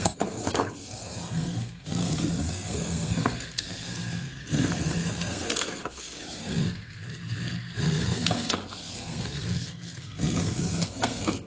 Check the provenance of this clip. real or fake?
fake